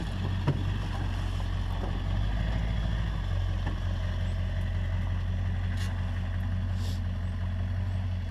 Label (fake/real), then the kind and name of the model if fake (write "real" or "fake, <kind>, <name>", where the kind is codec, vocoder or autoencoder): real